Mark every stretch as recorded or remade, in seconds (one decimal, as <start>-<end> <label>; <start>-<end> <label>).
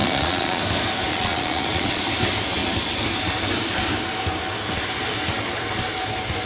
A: 0.0-0.6 remade; 0.6-1.1 recorded; 1.1-2.0 remade; 2.0-6.5 recorded